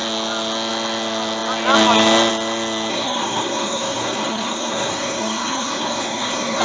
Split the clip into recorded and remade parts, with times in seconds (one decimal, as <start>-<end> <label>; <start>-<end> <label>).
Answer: 0.0-2.9 recorded; 2.9-6.6 remade